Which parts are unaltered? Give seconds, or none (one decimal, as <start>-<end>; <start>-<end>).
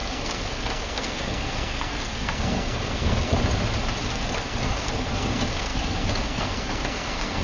3.3-4.1